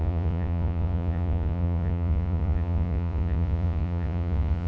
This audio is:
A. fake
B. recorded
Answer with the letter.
A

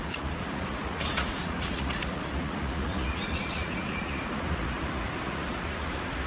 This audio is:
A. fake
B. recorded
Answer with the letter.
A